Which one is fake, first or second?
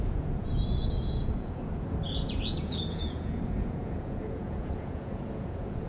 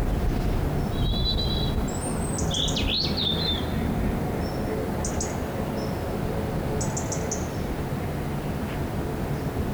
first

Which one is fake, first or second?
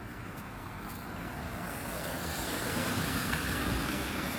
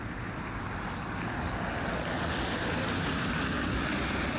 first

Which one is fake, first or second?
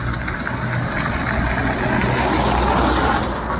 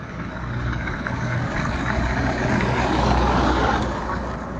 second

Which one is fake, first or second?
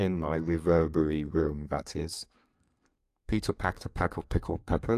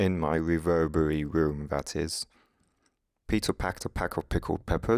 first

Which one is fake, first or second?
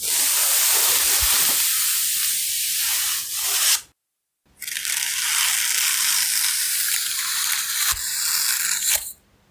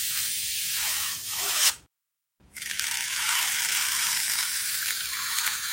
second